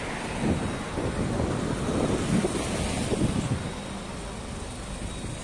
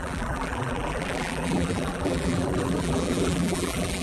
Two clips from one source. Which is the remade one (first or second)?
second